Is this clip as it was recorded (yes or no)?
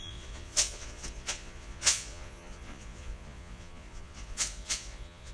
no